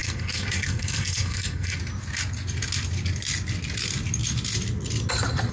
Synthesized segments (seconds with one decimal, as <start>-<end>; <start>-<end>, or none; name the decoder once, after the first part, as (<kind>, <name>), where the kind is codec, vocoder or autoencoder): 0.0-1.8 (codec, SNAC)